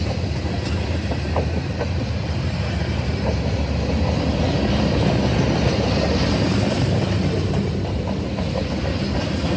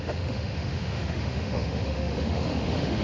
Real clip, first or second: first